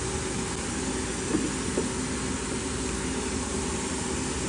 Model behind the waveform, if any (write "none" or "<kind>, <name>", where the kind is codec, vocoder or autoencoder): none